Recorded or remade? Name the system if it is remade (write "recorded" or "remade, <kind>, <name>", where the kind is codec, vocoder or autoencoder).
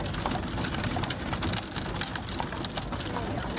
recorded